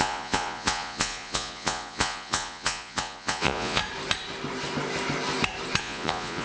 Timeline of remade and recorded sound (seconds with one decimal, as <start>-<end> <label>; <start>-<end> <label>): 0.0-3.8 remade; 3.8-5.8 recorded; 5.8-6.4 remade

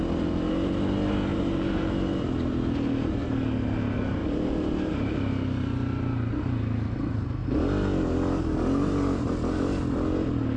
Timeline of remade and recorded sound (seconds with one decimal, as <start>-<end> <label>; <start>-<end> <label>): 0.0-1.3 recorded; 1.3-1.9 remade; 1.9-4.2 recorded; 4.2-4.9 remade; 4.9-10.6 recorded

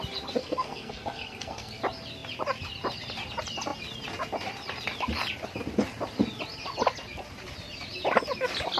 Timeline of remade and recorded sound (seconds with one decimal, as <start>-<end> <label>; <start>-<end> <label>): 0.0-0.4 recorded; 0.4-1.8 remade; 1.8-8.8 recorded

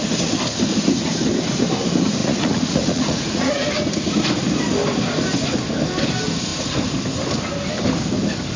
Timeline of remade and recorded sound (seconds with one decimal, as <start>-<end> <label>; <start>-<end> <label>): 0.0-2.2 recorded; 2.2-3.5 remade; 3.5-8.6 recorded